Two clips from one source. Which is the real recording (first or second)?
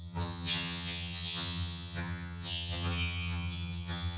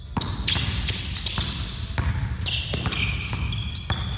second